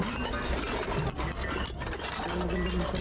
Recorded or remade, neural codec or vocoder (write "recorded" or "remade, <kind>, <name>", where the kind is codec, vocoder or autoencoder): recorded